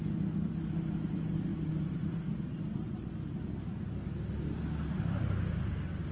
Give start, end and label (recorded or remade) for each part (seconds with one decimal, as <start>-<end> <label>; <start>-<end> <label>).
0.0-6.1 recorded